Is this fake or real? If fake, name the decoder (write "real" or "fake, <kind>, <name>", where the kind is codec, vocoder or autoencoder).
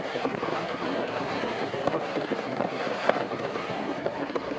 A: fake, codec, SNAC